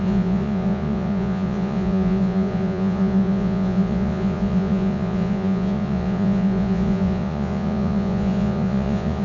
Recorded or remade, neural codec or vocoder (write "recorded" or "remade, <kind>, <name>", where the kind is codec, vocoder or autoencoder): remade, vocoder, Vocos